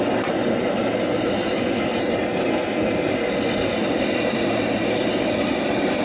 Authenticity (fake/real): real